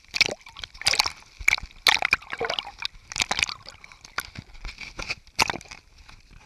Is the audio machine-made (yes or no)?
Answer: no